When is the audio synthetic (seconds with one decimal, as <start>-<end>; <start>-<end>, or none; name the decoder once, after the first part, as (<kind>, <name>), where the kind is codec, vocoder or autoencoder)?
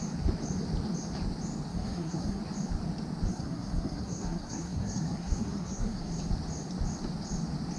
1.7-2.4 (codec, SNAC); 3.3-6.2